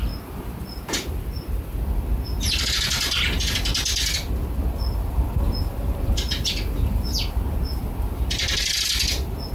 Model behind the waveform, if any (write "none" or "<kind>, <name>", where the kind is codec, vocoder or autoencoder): none